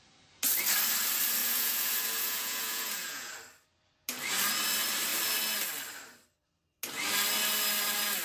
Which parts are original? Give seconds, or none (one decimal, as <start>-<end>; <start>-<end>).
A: 0.0-1.4; 3.3-8.2